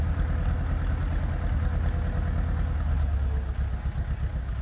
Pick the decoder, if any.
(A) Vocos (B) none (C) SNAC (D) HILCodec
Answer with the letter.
B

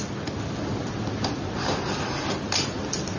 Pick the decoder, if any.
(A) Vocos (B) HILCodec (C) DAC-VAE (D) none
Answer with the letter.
D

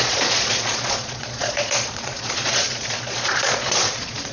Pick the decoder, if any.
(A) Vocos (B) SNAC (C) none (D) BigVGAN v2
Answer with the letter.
A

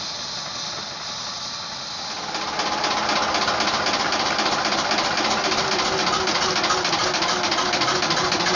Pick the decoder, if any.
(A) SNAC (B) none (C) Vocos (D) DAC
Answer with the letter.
B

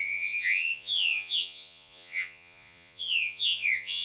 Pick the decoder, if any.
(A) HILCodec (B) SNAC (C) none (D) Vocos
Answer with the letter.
D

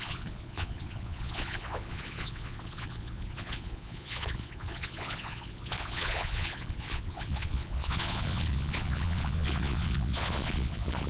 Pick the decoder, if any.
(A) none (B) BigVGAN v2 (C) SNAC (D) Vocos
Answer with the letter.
D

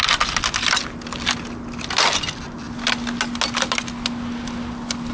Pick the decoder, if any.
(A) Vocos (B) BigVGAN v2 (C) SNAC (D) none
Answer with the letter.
D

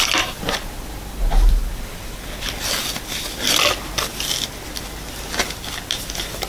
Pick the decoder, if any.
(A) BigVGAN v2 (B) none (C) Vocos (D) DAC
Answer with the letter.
B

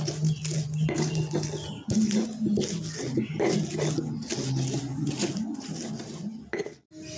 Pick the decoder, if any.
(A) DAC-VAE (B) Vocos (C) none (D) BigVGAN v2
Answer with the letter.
C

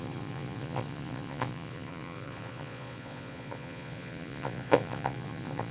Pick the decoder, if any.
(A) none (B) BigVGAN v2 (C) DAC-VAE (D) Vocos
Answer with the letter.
D